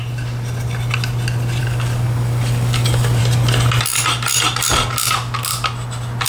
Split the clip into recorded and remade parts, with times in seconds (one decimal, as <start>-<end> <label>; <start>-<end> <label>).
0.0-1.6 recorded; 1.6-3.2 remade; 3.2-6.3 recorded